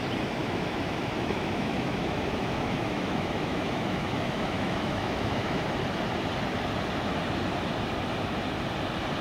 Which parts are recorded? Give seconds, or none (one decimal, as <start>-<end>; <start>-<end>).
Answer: 0.0-0.4; 5.6-9.2